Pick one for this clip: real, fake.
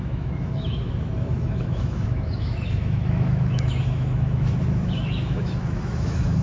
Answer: fake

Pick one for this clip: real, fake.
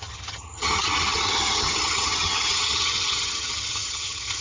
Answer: fake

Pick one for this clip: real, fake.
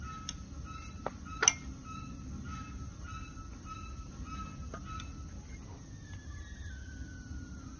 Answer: real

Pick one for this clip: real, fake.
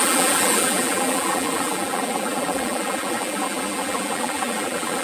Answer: fake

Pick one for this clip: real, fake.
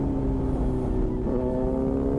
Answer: real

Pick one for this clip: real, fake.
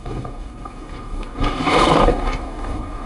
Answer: fake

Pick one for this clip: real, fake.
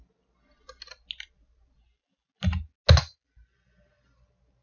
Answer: real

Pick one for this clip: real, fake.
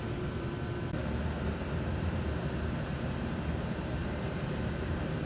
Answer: fake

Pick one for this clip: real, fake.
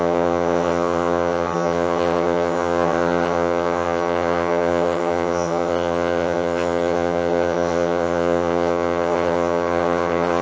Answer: fake